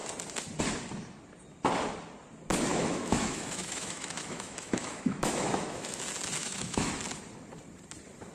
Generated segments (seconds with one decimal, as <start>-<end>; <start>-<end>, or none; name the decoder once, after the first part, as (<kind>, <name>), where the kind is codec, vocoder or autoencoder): 2.7-6.0 (autoencoder, DAC-VAE); 6.4-6.9